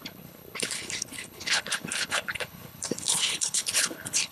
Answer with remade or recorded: remade